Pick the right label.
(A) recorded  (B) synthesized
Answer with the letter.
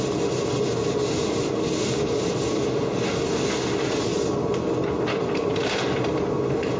A